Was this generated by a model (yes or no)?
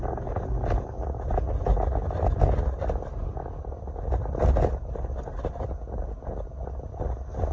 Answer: no